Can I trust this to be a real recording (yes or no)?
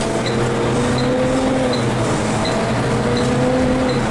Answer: yes